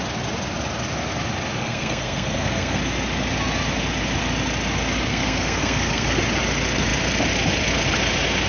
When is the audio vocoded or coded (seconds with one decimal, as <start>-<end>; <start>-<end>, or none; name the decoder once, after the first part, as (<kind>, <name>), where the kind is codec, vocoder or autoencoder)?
1.6-2.8 (codec, SNAC); 5.1-6.2